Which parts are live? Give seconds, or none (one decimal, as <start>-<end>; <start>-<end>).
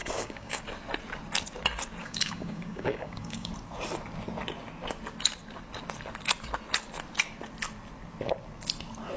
0.6-2.0; 3.5-9.2